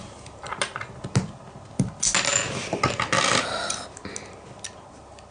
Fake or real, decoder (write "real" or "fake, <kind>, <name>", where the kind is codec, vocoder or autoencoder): real